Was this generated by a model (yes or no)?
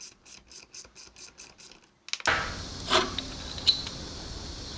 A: no